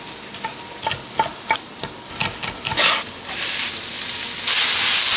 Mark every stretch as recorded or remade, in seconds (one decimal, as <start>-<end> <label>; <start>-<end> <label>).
0.0-1.3 recorded; 1.3-2.1 remade; 2.1-2.7 recorded; 2.7-4.4 remade; 4.4-5.2 recorded